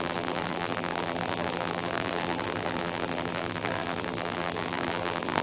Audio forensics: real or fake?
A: fake